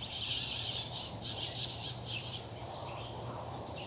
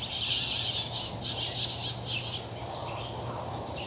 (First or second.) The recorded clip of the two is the second